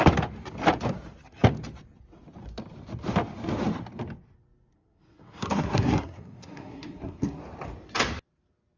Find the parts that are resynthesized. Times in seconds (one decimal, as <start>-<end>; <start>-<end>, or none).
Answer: 4.7-7.4